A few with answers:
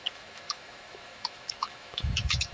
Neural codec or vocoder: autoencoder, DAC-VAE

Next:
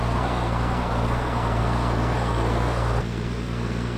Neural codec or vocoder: codec, SNAC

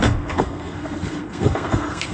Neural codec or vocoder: codec, SNAC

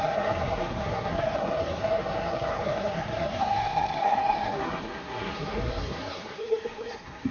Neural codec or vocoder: codec, SNAC